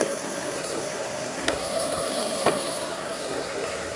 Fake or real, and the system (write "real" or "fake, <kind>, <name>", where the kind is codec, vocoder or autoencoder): fake, codec, SNAC